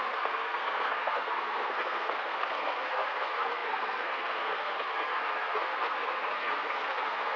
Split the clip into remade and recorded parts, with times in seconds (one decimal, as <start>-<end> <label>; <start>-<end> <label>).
0.0-7.4 remade